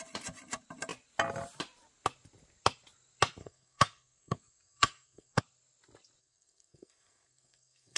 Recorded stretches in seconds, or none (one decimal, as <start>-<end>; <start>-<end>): 0.0-3.4; 5.4-6.2